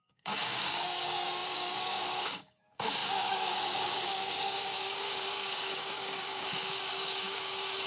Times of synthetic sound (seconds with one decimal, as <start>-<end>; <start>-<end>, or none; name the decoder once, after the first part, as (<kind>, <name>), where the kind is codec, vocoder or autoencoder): 0.0-7.9 (codec, DAC)